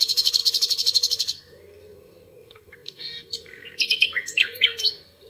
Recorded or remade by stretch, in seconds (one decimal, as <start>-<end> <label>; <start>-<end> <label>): 0.0-5.3 remade